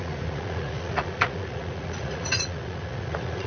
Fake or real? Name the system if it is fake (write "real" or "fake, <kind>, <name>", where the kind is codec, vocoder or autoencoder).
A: fake, vocoder, Vocos